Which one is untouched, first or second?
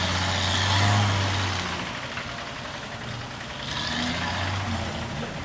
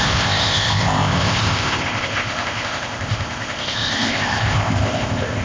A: first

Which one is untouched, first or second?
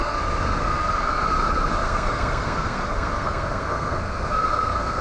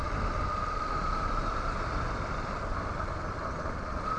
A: second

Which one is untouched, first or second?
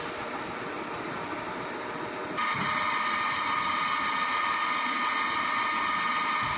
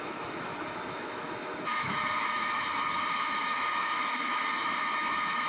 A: first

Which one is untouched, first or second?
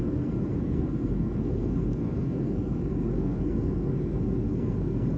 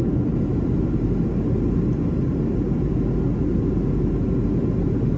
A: second